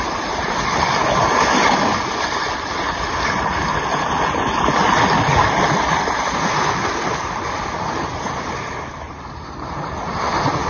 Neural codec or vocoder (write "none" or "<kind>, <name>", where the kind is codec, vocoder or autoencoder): none